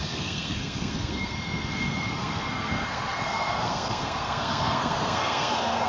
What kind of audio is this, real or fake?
fake